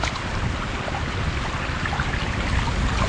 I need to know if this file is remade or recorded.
recorded